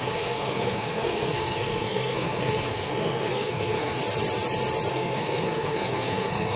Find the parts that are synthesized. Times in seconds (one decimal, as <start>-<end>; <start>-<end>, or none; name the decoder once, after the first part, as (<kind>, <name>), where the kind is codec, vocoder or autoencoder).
0.0-4.0 (codec, SNAC); 4.9-6.6

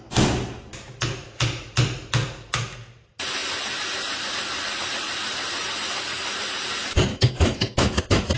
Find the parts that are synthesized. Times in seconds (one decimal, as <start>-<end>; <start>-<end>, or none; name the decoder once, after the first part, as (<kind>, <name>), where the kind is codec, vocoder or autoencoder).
7.1-8.0 (autoencoder, DAC-VAE)

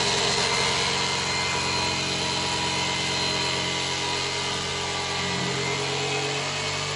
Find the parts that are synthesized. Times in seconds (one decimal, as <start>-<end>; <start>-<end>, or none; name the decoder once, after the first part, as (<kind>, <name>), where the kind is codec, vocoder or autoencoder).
none

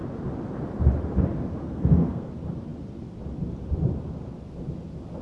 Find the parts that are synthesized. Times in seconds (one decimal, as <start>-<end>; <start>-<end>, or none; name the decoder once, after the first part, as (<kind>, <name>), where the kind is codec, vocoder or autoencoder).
1.6-2.3 (codec, SNAC)

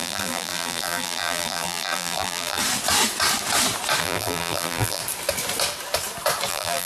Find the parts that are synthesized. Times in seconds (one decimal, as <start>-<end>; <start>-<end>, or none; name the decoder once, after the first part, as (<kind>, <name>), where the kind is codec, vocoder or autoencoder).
0.0-2.6 (vocoder, BigVGAN v2); 4.0-5.0; 6.5-6.9